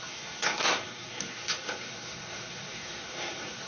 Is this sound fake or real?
fake